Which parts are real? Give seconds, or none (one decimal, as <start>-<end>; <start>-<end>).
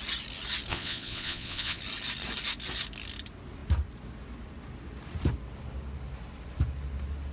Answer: 0.0-0.7; 1.8-7.3